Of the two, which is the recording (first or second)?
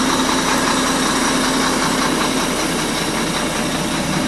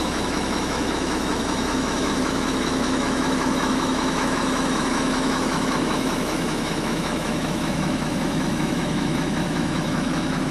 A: first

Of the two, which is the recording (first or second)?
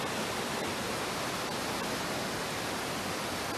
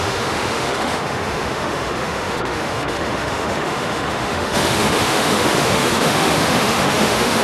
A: first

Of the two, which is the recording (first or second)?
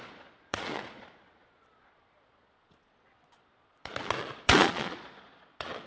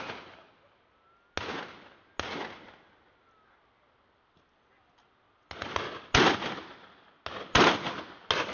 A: second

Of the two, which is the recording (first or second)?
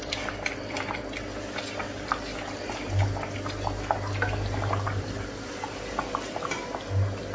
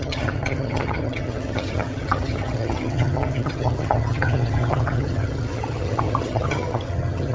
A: first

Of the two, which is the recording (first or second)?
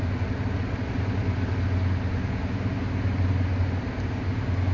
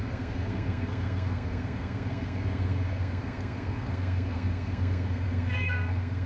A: first